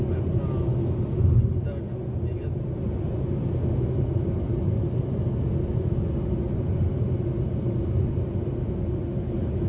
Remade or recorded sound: recorded